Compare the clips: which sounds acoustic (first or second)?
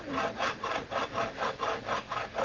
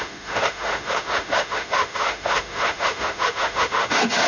first